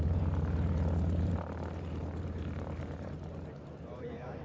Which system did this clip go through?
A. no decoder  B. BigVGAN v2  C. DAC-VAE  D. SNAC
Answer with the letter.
B